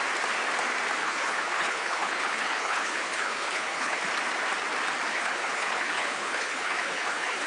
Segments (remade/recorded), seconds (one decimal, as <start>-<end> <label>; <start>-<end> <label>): 0.0-1.0 recorded; 1.0-4.0 remade; 4.0-5.1 recorded; 5.1-7.5 remade